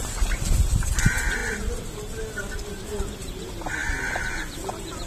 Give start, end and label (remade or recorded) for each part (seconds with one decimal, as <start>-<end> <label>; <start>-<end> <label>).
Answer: 0.0-5.1 recorded